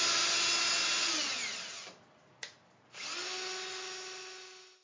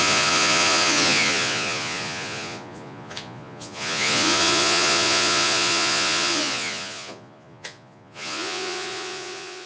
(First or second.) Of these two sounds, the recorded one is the first